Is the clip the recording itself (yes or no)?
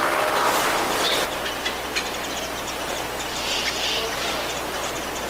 yes